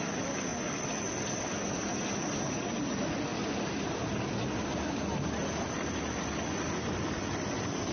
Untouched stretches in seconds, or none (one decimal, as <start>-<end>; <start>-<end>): 0.0-7.9